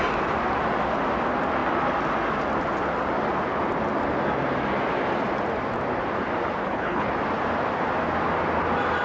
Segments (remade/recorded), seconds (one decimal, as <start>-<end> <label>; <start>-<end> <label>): 0.0-6.6 recorded; 6.6-7.1 remade; 7.1-9.0 recorded